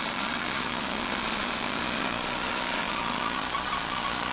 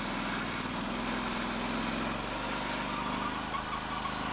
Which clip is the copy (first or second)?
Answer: first